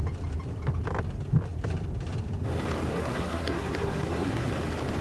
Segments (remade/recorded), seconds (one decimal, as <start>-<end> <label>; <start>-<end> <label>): 0.0-2.9 recorded; 2.9-4.5 remade; 4.5-5.0 recorded